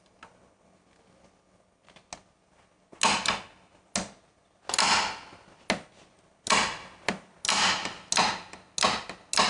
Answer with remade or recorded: recorded